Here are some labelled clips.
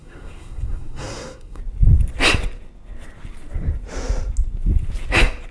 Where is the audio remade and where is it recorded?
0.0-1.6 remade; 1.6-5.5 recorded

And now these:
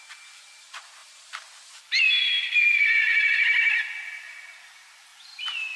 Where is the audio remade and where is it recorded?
0.0-5.8 recorded

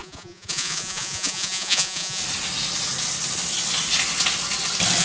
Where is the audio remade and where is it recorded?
0.0-2.2 remade; 2.2-5.0 recorded

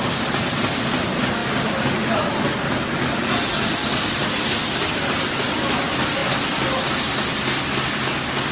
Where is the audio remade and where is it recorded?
0.0-1.4 recorded; 1.4-2.5 remade; 2.5-8.5 recorded

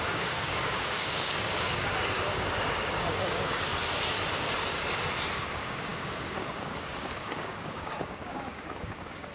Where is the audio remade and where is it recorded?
0.0-3.7 remade; 3.7-5.5 recorded; 5.5-9.3 remade

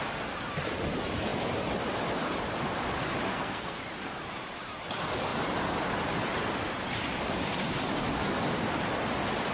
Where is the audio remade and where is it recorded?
0.0-3.3 recorded; 3.3-3.8 remade; 3.8-9.5 recorded

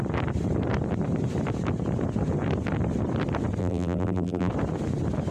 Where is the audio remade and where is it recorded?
0.0-3.6 recorded; 3.6-4.5 remade; 4.5-5.3 recorded

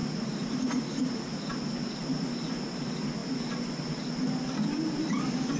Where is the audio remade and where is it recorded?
0.0-1.5 remade; 1.5-5.6 recorded